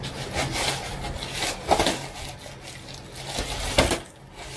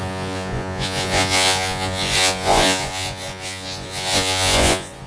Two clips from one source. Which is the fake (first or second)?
second